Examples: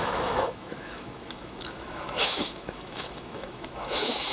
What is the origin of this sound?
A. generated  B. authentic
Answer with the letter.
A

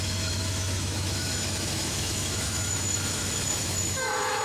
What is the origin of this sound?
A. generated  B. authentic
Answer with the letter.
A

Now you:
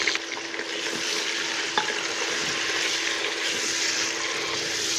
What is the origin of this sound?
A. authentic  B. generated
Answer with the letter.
A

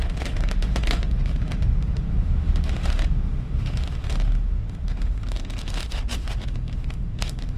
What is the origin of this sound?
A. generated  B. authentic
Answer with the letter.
A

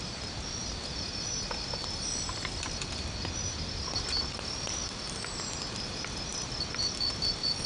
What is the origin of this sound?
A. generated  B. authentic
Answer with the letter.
B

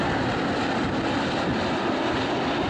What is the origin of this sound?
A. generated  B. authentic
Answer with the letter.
B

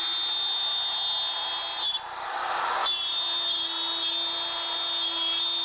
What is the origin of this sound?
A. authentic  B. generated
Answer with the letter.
A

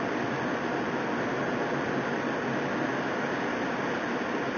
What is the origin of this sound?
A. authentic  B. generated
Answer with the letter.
A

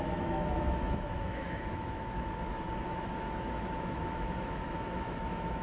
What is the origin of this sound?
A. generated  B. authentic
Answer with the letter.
A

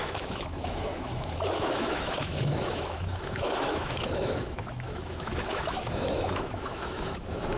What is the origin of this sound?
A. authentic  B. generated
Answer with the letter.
B